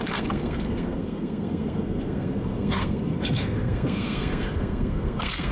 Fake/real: fake